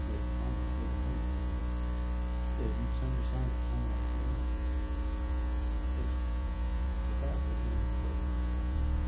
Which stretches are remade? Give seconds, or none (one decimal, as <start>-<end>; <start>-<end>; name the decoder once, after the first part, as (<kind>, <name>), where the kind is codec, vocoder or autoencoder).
0.0-1.6 (vocoder, Vocos); 4.3-9.1